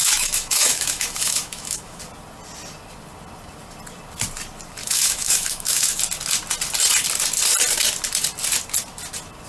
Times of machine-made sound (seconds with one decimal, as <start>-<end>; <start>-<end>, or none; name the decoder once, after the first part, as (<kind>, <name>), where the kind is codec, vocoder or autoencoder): 0.0-2.0 (autoencoder, DAC-VAE); 4.8-6.0